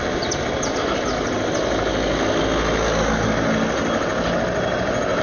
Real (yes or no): yes